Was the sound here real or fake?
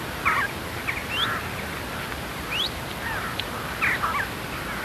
real